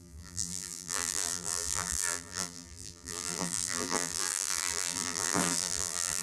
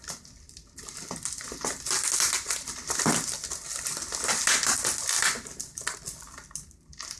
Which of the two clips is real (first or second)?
second